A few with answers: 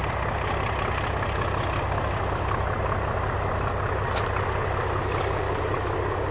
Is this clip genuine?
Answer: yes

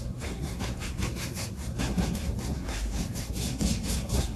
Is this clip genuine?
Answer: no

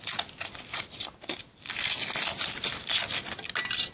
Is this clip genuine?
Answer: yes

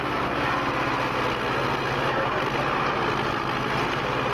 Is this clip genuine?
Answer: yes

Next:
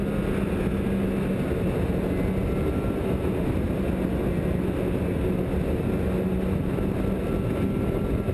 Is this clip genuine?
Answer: yes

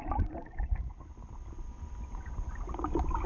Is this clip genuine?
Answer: yes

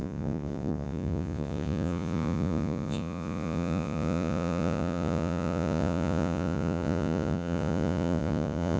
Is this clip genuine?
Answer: no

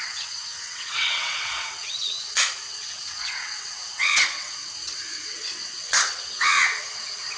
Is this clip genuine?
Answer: no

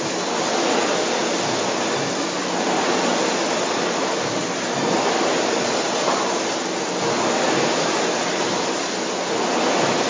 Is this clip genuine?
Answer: yes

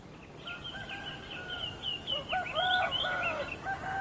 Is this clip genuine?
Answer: yes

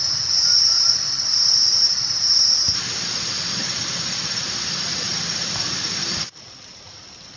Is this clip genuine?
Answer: no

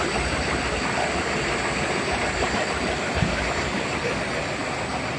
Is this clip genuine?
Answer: yes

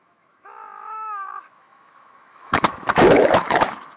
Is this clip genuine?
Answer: no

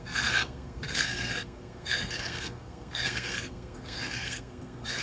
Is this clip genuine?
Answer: no